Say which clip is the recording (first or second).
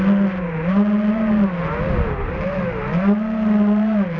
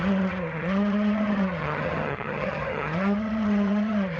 first